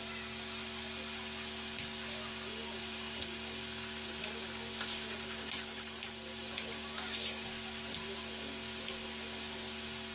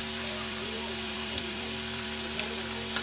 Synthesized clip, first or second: second